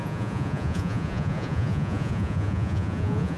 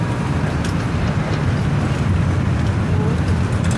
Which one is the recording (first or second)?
second